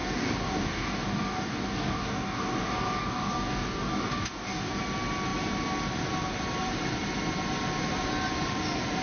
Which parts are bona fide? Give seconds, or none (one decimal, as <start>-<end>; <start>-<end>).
4.7-9.0